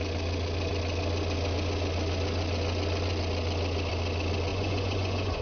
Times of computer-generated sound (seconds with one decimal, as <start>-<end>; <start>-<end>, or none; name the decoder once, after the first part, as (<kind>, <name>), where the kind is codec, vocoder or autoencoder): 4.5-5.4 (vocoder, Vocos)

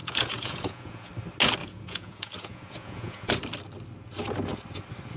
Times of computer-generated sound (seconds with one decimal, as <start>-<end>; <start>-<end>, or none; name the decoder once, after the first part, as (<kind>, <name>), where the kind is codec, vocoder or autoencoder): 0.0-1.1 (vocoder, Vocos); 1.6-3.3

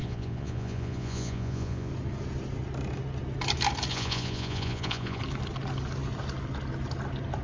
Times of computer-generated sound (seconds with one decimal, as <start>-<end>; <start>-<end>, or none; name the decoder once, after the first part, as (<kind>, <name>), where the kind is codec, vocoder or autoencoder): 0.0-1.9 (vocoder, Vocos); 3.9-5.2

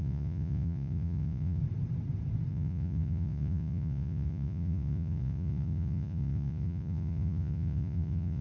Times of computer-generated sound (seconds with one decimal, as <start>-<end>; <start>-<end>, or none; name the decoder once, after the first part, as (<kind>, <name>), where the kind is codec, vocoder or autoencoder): 0.0-1.6 (vocoder, Vocos); 2.5-8.4

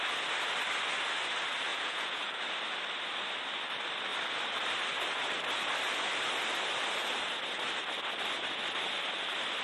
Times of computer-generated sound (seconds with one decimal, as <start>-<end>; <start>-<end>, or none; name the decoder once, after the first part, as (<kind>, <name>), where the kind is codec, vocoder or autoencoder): 1.7-2.4 (vocoder, Vocos)